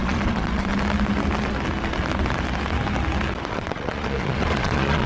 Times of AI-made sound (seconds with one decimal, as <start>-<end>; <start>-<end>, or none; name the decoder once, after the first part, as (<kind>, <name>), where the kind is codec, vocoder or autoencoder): 0.0-0.7 (vocoder, Vocos); 3.5-5.1